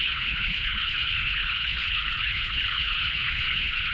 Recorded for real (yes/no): no